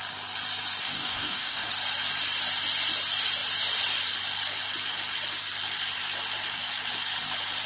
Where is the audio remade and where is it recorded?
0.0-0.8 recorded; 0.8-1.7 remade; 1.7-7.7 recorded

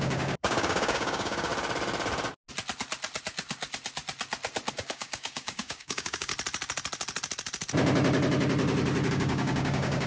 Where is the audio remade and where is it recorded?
0.0-1.5 remade; 1.5-4.7 recorded; 4.7-6.3 remade; 6.3-9.1 recorded; 9.1-10.1 remade

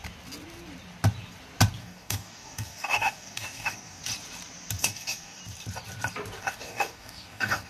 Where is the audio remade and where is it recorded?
0.0-1.8 recorded; 1.8-4.0 remade; 4.0-4.8 recorded; 4.8-5.4 remade; 5.4-6.4 recorded; 6.4-7.7 remade

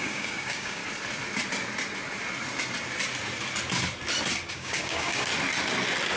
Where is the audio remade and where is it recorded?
0.0-0.8 remade; 0.8-4.5 recorded; 4.5-5.3 remade; 5.3-6.2 recorded